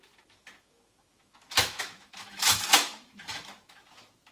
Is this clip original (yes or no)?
no